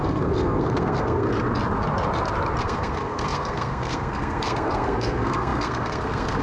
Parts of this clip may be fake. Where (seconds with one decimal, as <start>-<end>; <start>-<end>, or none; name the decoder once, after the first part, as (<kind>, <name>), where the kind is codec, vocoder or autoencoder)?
0.0-1.3 (codec, SNAC); 2.6-6.4

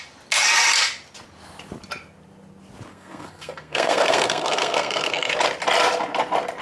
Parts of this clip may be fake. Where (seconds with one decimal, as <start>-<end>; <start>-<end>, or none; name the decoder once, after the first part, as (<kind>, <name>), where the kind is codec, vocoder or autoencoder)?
2.9-5.3 (codec, SNAC)

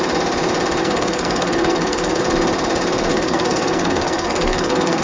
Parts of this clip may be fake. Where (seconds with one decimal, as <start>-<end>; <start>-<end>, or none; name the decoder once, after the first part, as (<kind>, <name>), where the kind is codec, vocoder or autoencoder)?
0.8-2.2 (codec, SNAC); 3.1-5.0

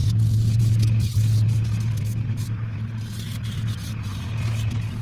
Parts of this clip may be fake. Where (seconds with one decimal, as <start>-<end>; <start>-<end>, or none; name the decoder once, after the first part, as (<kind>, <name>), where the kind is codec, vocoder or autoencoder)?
none

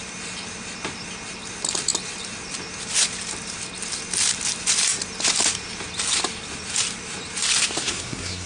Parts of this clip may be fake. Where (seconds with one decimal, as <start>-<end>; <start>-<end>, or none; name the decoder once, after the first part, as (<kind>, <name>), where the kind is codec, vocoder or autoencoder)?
7.8-8.5 (codec, SNAC)

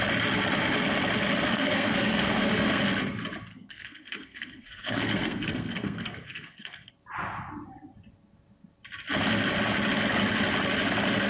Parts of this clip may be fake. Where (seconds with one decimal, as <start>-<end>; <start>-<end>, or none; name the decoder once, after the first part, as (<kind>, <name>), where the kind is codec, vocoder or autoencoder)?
1.5-2.8 (codec, SNAC); 3.5-6.9

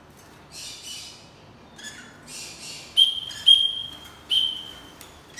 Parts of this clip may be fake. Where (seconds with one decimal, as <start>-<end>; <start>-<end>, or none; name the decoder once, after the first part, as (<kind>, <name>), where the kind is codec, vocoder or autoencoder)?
none

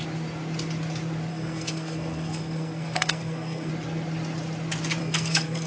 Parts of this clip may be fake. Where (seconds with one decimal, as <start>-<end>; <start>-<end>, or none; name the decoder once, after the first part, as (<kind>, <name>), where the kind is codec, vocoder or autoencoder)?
1.3-3.7 (codec, SNAC); 5.0-5.7